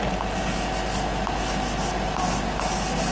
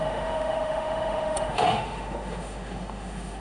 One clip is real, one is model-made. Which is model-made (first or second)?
second